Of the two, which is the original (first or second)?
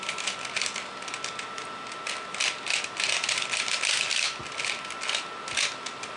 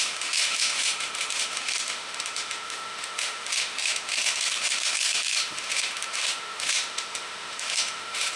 first